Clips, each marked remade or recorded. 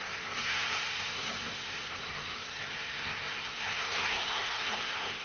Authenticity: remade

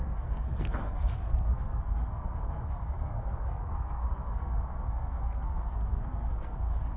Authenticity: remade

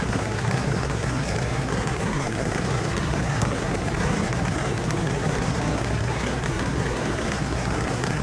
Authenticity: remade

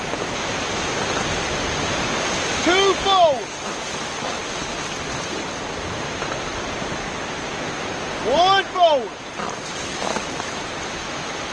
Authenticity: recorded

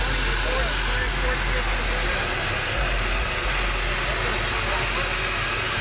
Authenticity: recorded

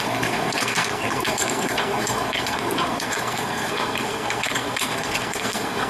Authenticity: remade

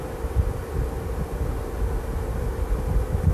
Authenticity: recorded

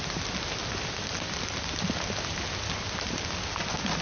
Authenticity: recorded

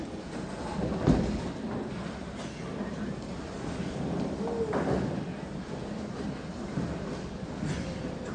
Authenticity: recorded